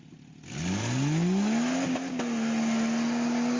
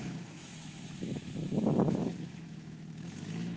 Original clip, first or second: first